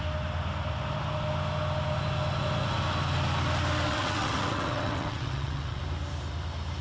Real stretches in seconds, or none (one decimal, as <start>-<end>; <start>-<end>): 0.0-3.9; 5.8-6.8